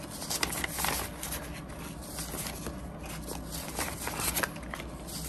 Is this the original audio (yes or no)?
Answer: yes